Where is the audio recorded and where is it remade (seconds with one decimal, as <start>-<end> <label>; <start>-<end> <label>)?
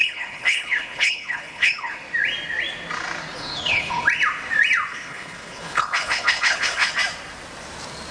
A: 0.0-1.9 remade; 1.9-3.4 recorded; 3.4-4.0 remade; 4.0-4.9 recorded; 4.9-6.9 remade; 6.9-8.1 recorded